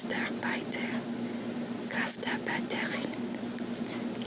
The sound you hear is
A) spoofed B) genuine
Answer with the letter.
B